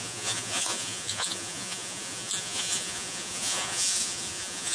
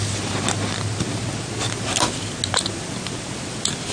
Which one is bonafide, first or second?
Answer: second